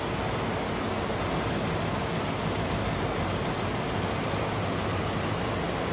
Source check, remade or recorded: recorded